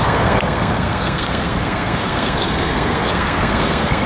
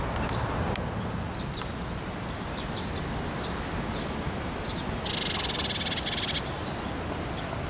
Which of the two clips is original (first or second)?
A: second